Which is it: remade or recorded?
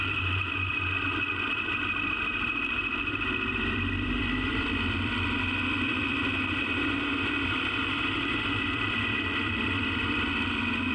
remade